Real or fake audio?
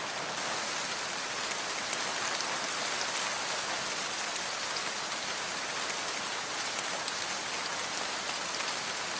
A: real